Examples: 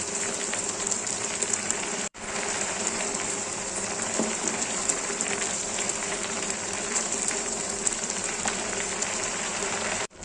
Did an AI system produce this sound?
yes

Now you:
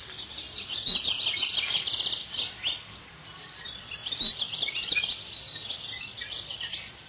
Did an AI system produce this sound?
yes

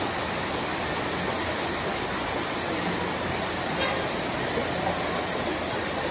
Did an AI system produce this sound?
yes